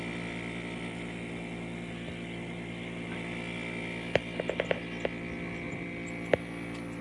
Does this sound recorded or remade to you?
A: recorded